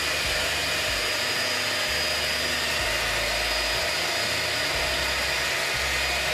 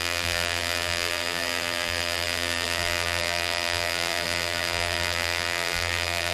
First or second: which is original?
first